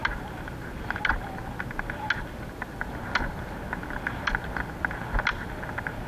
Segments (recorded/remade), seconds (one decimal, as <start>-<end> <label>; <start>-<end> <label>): 0.0-6.1 recorded